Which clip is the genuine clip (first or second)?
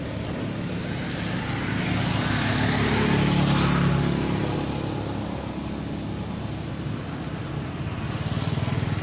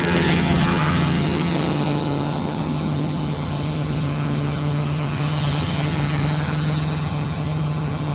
first